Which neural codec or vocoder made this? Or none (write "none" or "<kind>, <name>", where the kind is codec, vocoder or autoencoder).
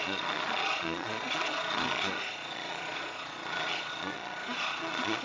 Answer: vocoder, Vocos